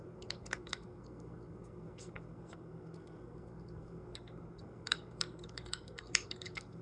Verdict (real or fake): fake